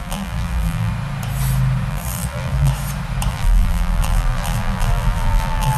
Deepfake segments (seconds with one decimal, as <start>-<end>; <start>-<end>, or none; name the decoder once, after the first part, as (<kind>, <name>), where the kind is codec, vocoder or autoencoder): 0.0-0.9 (vocoder, BigVGAN v2); 1.9-2.7; 3.3-5.8